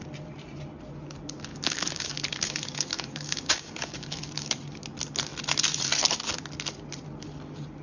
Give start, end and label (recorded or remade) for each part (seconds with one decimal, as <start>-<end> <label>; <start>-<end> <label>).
0.0-1.5 recorded; 1.5-4.6 remade; 4.6-7.8 recorded